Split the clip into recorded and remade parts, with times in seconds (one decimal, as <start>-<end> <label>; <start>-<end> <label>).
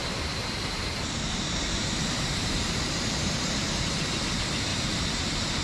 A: 0.0-2.6 remade; 2.6-4.7 recorded; 4.7-5.6 remade